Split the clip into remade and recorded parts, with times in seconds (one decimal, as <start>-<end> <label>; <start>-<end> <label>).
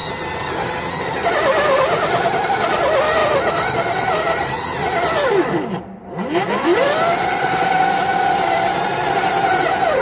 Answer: 0.0-10.0 recorded